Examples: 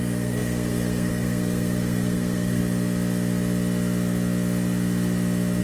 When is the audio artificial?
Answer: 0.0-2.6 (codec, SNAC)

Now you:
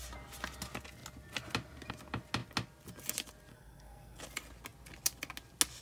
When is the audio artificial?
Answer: 3.5-4.2 (codec, SNAC)

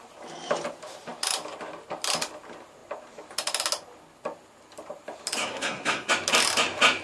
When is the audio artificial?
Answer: 5.4-6.1 (codec, SNAC)

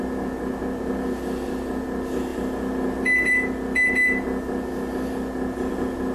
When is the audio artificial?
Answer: none

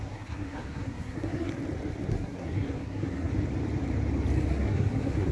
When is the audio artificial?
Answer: 0.0-1.6 (codec, SNAC); 2.1-3.3; 4.5-5.3

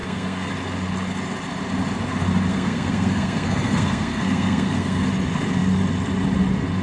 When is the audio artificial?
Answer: 0.0-0.5 (codec, SNAC); 2.5-5.1

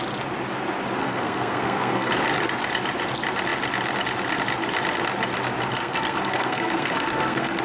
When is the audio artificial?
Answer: 1.0-2.1 (codec, SNAC); 5.8-7.6

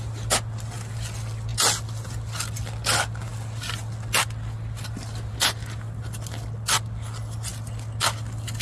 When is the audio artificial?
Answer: none